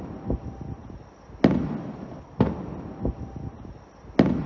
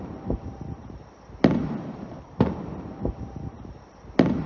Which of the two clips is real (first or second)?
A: first